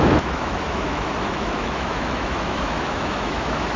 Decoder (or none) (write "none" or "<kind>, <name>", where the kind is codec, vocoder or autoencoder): autoencoder, DAC-VAE